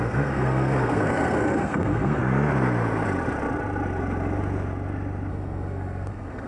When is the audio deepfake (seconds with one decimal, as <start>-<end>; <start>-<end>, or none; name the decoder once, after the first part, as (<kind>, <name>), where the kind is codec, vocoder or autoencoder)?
0.0-2.2 (codec, SNAC); 5.3-6.5